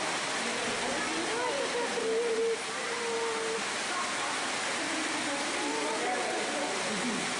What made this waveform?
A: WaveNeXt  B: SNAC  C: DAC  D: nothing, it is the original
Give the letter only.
D